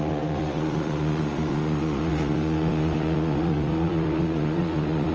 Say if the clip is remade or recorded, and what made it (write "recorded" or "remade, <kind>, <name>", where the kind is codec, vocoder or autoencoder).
remade, vocoder, Vocos